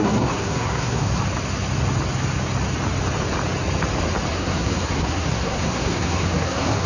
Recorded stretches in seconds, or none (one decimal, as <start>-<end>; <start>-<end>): 1.2-4.3